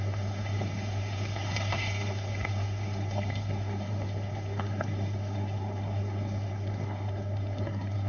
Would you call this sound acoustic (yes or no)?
no